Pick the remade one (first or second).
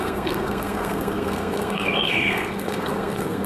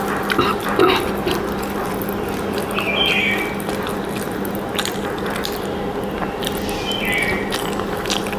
first